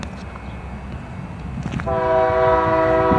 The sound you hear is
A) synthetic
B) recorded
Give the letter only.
B